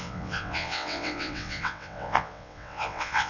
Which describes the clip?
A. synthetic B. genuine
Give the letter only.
A